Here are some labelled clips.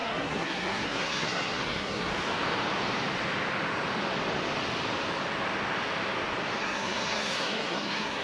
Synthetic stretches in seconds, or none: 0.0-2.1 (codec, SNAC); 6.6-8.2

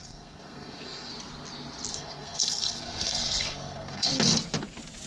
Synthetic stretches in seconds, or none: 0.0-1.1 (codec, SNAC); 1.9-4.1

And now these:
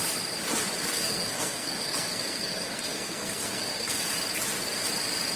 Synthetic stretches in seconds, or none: 0.9-4.1 (codec, SNAC)